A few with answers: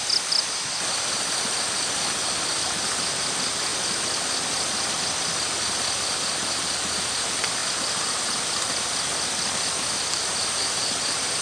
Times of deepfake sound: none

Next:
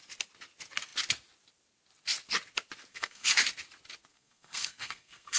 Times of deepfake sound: 2.9-3.4 (codec, SNAC); 4.1-5.4

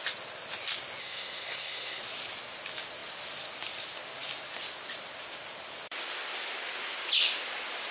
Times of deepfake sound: 1.0-2.0 (codec, SNAC)

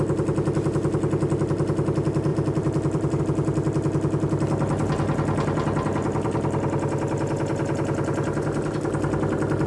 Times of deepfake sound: 2.3-3.2 (vocoder, BigVGAN v2)

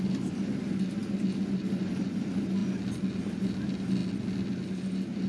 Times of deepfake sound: none

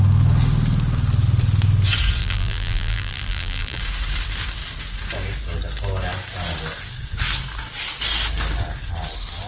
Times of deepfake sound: 2.2-3.8 (vocoder, BigVGAN v2)